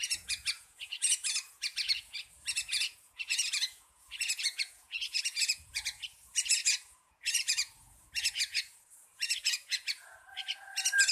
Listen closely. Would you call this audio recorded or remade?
remade